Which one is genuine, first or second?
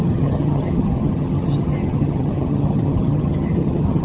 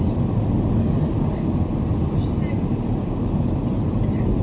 second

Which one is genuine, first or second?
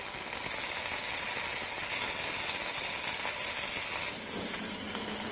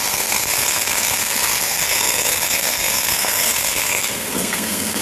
first